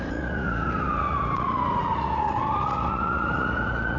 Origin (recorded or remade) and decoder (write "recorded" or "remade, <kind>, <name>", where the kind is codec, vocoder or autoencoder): remade, vocoder, Vocos